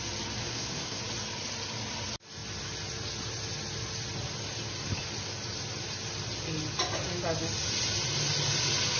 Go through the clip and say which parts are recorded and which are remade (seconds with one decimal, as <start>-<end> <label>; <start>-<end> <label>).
0.0-0.4 recorded; 0.4-1.0 remade; 1.0-9.0 recorded